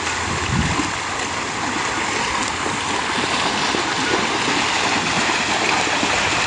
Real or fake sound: real